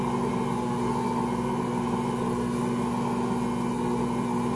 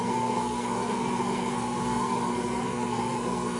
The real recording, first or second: first